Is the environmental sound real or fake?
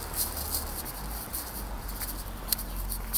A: real